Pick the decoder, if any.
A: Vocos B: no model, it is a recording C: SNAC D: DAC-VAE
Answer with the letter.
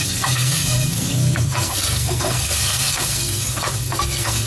C